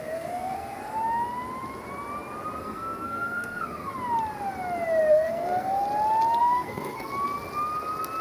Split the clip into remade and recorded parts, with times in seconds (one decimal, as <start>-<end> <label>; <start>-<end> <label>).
0.0-0.8 remade; 0.8-2.6 recorded; 2.6-3.9 remade; 3.9-5.1 recorded; 5.1-5.8 remade; 5.8-6.4 recorded; 6.4-7.1 remade; 7.1-8.2 recorded